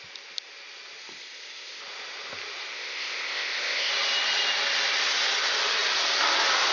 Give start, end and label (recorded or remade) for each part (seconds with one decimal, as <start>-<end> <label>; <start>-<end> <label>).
0.0-1.0 recorded; 1.0-1.8 remade; 1.8-2.7 recorded; 2.7-3.9 remade; 3.9-6.7 recorded